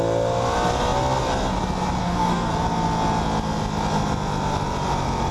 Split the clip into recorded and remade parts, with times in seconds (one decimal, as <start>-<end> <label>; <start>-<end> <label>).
0.0-2.0 recorded; 2.0-2.5 remade; 2.5-5.3 recorded